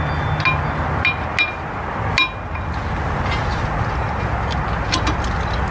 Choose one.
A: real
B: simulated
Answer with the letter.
A